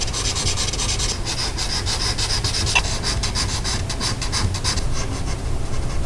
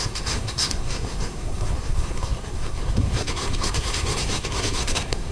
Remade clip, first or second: second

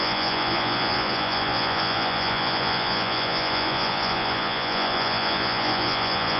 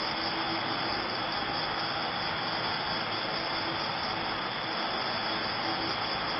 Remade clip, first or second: first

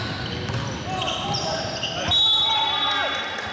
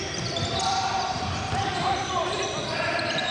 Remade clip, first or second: second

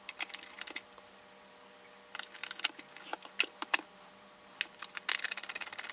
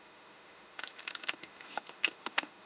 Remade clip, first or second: second